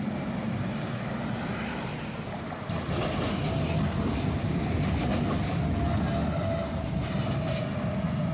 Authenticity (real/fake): real